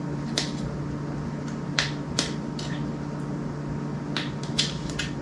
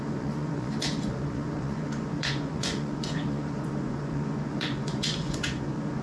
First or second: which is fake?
second